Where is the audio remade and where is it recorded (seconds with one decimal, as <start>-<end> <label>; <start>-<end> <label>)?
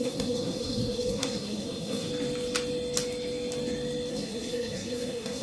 0.0-2.1 remade; 2.1-4.1 recorded; 4.1-5.4 remade